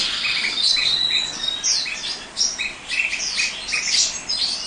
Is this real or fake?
real